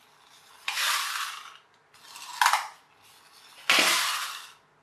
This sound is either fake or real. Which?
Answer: real